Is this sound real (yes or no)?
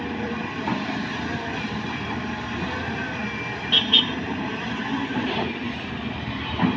no